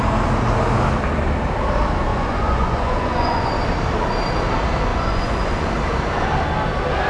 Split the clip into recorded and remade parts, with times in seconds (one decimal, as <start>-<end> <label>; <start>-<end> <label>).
0.0-2.1 recorded; 2.1-3.5 remade; 3.5-4.9 recorded; 4.9-5.7 remade; 5.7-7.1 recorded